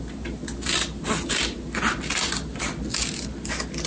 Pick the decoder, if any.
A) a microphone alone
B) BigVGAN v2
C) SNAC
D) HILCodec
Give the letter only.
A